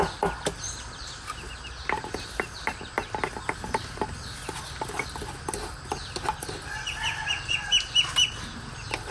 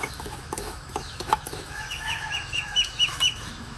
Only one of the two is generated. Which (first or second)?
second